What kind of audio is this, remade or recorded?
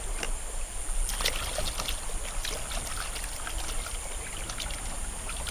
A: recorded